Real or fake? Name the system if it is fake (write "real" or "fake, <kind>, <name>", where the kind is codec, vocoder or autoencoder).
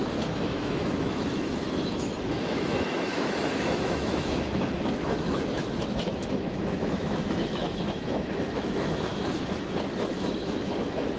fake, autoencoder, DAC-VAE